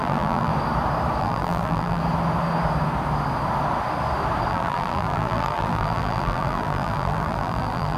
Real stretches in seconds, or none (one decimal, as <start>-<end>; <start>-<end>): 0.5-1.2; 2.0-4.5